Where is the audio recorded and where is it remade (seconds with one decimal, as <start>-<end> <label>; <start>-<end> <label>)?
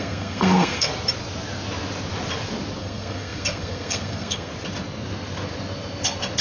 0.0-0.9 remade; 0.9-2.8 recorded; 2.8-4.5 remade; 4.5-6.4 recorded